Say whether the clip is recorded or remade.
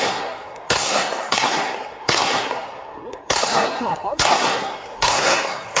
remade